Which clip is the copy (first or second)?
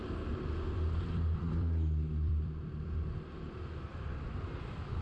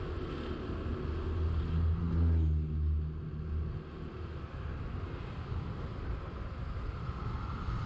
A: first